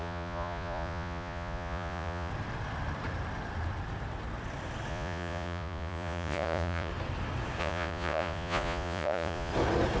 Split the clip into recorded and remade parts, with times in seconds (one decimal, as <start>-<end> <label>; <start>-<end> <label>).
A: 0.0-2.3 remade; 2.3-4.9 recorded; 4.9-6.9 remade; 6.9-7.6 recorded; 7.6-9.5 remade; 9.5-10.0 recorded